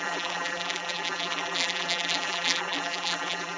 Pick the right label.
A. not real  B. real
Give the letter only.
A